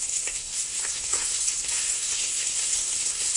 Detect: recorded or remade remade